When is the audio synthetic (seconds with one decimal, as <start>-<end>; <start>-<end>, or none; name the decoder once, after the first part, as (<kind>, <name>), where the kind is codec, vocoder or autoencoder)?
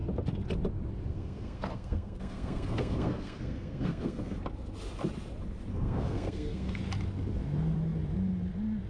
1.1-4.4 (codec, SNAC); 5.7-6.8